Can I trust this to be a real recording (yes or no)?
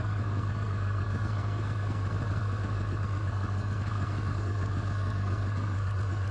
no